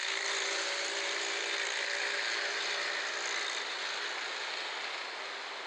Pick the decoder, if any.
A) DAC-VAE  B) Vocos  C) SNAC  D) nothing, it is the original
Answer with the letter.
D